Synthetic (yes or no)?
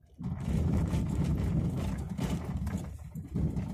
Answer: no